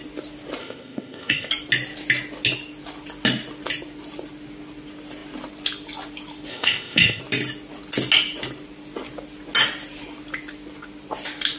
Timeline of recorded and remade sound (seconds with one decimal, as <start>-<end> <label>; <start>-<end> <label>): 0.0-0.6 recorded; 0.6-1.5 remade; 1.5-6.5 recorded; 6.5-7.2 remade; 7.2-11.6 recorded